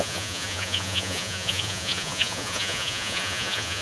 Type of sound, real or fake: fake